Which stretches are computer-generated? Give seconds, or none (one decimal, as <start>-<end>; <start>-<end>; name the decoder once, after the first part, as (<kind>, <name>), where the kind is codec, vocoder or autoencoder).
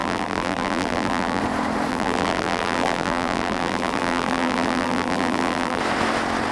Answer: 0.0-1.4 (vocoder, BigVGAN v2); 1.9-5.8